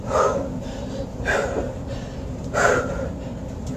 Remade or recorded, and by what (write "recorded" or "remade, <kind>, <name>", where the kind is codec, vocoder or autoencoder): remade, vocoder, BigVGAN v2